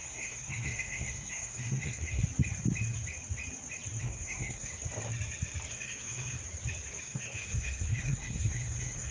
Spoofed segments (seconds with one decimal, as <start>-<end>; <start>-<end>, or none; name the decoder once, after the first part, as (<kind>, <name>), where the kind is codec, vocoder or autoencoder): 0.0-2.2 (codec, SNAC); 4.0-4.7; 5.7-6.4; 7.0-9.1